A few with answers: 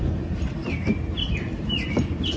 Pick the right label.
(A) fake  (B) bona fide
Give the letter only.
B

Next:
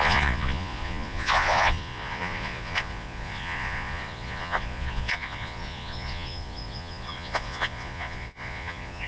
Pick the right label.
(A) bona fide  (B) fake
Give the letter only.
B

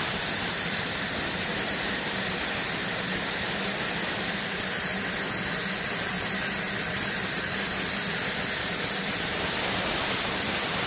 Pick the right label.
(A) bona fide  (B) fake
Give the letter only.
A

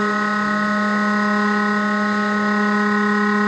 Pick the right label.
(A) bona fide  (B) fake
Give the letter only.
A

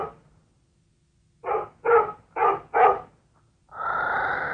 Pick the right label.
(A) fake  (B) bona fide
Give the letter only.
B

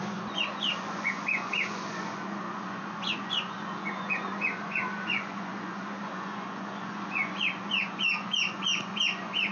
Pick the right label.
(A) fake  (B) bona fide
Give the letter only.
A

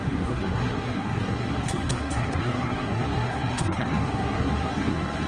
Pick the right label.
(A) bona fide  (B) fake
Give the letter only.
B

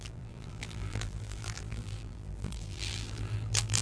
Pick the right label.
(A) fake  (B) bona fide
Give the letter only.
A